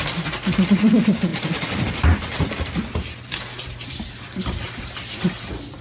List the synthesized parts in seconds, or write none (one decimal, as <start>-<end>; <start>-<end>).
0.0-5.8